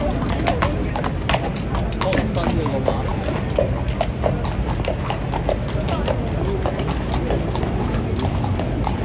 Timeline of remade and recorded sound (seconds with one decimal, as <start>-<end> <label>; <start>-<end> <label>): 0.0-9.0 recorded